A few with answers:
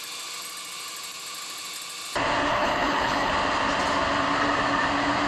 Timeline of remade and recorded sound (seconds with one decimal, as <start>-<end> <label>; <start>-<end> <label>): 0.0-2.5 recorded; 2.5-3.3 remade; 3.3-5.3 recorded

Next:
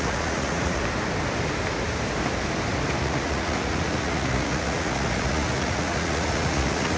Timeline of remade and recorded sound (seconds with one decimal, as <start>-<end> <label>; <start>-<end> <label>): 0.0-0.8 remade; 0.8-3.0 recorded; 3.0-7.0 remade

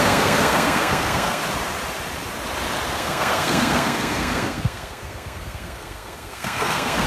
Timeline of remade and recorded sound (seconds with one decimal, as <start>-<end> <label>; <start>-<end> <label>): 0.0-1.4 remade; 1.4-2.9 recorded; 2.9-7.1 remade

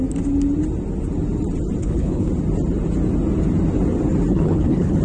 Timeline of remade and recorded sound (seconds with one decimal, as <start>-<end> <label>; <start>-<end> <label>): 0.0-1.8 recorded; 1.8-2.3 remade; 2.3-4.3 recorded; 4.3-5.0 remade

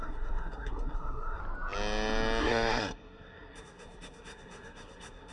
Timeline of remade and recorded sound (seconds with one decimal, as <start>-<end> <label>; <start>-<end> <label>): 0.0-1.4 remade; 1.4-2.4 recorded; 2.4-5.3 remade

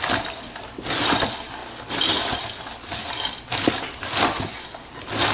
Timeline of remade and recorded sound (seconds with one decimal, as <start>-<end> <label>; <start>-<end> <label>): 0.0-5.3 recorded